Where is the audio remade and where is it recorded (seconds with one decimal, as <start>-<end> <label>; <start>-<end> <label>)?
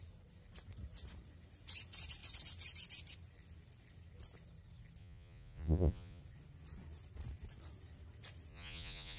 0.0-5.0 recorded; 5.0-6.2 remade; 6.2-8.5 recorded; 8.5-9.2 remade